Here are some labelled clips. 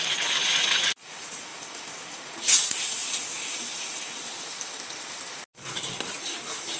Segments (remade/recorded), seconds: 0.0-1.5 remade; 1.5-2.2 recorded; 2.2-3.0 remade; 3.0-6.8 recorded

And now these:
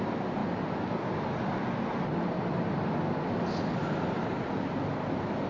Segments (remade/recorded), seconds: 0.0-5.5 recorded

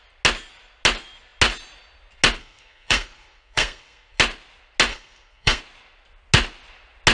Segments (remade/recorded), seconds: 0.0-2.4 recorded; 2.4-4.2 remade; 4.2-4.9 recorded; 4.9-5.6 remade; 5.6-7.1 recorded

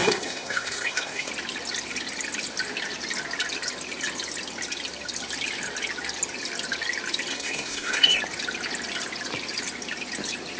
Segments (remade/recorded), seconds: 0.0-1.3 remade; 1.3-7.3 recorded; 7.3-8.2 remade; 8.2-10.6 recorded

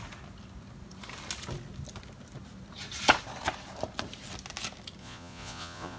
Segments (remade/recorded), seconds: 0.0-5.0 recorded; 5.0-6.0 remade

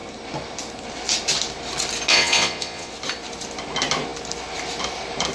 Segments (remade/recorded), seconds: 0.0-2.1 recorded; 2.1-2.9 remade; 2.9-5.3 recorded

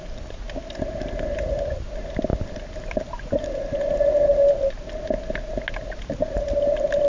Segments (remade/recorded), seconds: 0.0-7.1 recorded